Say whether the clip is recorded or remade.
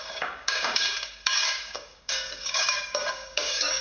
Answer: remade